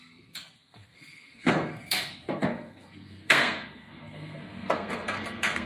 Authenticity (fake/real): fake